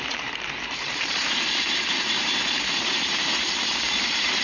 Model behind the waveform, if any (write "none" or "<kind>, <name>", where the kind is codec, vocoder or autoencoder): vocoder, BigVGAN v2